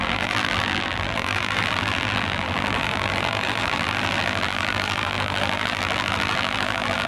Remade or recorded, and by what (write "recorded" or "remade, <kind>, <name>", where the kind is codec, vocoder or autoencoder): remade, vocoder, BigVGAN v2